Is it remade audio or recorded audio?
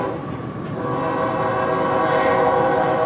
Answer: recorded